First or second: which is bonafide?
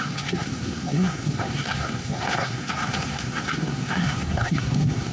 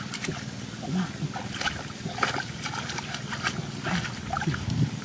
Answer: second